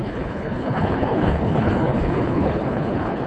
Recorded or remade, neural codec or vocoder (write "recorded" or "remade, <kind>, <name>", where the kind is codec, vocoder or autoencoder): remade, codec, HILCodec